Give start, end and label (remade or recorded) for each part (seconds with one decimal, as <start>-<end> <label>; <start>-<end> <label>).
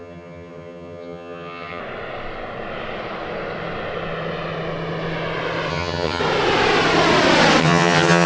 0.0-1.8 remade; 1.8-5.7 recorded; 5.7-6.2 remade; 6.2-7.6 recorded; 7.6-8.3 remade